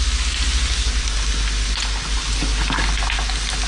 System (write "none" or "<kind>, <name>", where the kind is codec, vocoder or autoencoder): none